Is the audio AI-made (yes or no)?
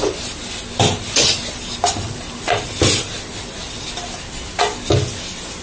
no